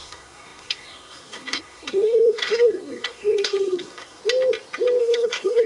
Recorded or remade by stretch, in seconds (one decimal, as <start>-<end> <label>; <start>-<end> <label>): 0.0-4.2 remade; 4.2-5.0 recorded; 5.0-5.7 remade